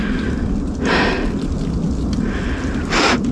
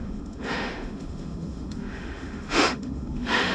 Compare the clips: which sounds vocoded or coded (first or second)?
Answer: second